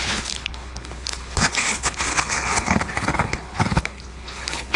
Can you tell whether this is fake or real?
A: fake